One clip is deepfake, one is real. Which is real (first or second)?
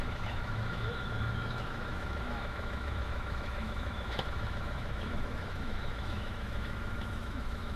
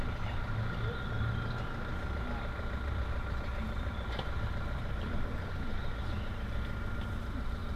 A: second